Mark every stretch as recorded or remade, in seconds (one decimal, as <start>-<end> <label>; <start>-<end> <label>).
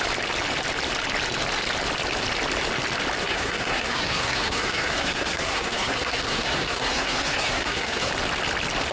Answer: 0.0-3.2 recorded; 3.2-8.1 remade; 8.1-8.9 recorded